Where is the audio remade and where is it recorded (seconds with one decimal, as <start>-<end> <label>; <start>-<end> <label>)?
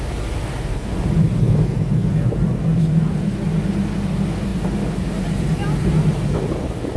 0.0-7.0 recorded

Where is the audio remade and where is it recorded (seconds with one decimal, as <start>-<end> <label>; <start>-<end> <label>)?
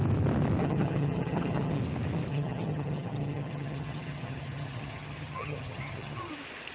0.0-0.6 recorded; 0.6-1.8 remade; 1.8-2.3 recorded; 2.3-6.3 remade; 6.3-6.7 recorded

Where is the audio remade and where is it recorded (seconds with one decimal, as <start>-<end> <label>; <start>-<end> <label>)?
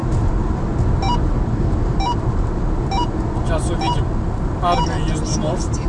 0.0-5.9 recorded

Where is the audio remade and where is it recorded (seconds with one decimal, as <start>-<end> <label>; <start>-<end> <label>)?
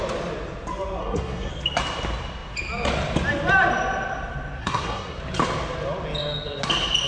0.0-1.0 recorded; 1.0-1.5 remade; 1.5-4.6 recorded; 4.6-5.2 remade; 5.2-7.1 recorded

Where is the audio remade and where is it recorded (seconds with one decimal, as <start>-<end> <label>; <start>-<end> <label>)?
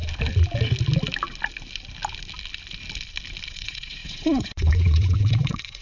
0.0-3.5 recorded; 3.5-5.8 remade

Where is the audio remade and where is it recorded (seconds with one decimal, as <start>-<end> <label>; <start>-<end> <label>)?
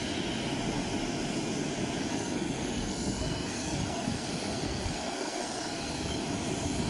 0.0-2.1 recorded; 2.1-6.2 remade; 6.2-6.9 recorded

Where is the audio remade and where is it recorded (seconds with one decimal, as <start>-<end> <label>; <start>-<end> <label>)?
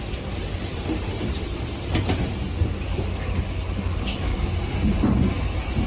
0.0-0.7 recorded; 0.7-1.6 remade; 1.6-4.3 recorded; 4.3-4.8 remade; 4.8-5.9 recorded